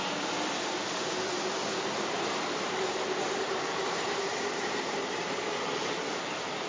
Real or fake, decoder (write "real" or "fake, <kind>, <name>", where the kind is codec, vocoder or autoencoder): fake, vocoder, BigVGAN v2